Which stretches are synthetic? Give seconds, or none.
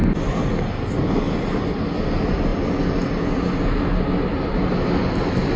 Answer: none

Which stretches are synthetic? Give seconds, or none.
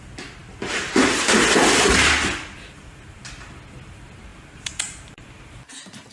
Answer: 4.3-5.3 (vocoder, BigVGAN v2)